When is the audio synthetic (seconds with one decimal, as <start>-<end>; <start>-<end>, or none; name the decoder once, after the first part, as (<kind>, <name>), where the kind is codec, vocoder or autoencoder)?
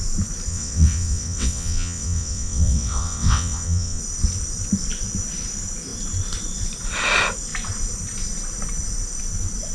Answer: 0.5-4.0 (vocoder, WaveNeXt)